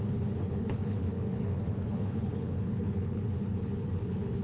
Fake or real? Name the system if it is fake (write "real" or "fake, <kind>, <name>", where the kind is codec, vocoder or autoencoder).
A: fake, codec, HILCodec